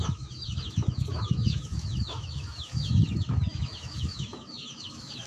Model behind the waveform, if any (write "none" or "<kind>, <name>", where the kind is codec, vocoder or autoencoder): autoencoder, DAC-VAE